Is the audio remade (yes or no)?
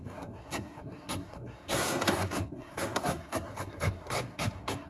yes